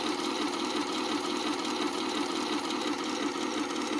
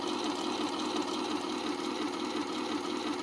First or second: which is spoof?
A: first